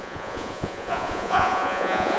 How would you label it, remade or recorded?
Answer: remade